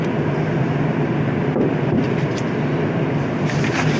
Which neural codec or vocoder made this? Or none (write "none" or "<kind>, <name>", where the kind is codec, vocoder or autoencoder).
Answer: none